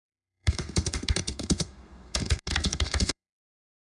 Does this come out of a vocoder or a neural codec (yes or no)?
yes